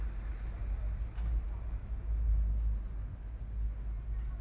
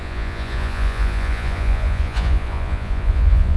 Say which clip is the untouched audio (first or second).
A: first